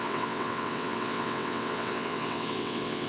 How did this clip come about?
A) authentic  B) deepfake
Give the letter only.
B